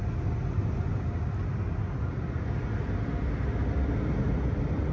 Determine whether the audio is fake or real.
real